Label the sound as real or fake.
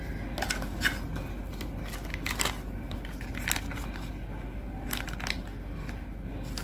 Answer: real